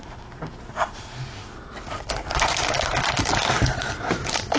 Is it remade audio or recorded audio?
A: recorded